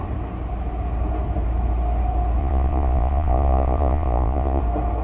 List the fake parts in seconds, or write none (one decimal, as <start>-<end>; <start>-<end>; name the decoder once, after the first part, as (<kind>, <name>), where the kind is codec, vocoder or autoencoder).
2.4-4.6 (vocoder, Vocos)